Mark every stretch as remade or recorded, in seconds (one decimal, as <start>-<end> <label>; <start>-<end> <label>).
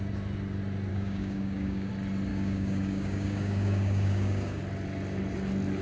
0.0-0.9 recorded; 0.9-1.9 remade; 1.9-2.3 recorded; 2.3-4.6 remade; 4.6-5.8 recorded